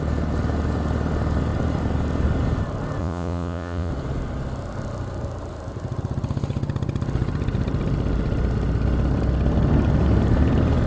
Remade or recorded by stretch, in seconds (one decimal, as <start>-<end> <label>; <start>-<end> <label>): 0.0-3.0 recorded; 3.0-3.9 remade; 3.9-10.9 recorded